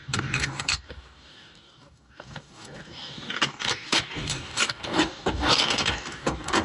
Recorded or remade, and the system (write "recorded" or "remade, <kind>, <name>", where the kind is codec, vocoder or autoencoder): remade, codec, DAC